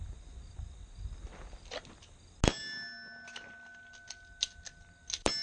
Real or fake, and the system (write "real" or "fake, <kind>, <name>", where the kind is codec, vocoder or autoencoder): real